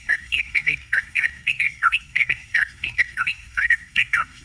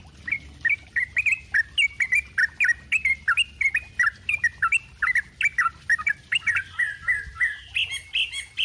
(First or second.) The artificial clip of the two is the first